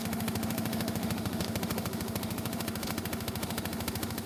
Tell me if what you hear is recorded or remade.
remade